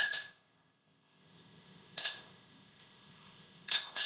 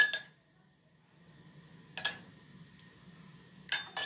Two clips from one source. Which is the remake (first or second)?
first